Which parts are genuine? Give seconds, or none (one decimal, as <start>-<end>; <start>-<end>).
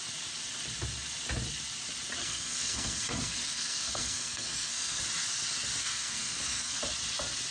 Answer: 0.0-2.2; 5.0-5.8; 6.8-7.5